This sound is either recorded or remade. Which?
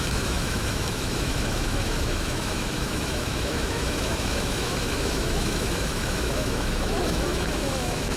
remade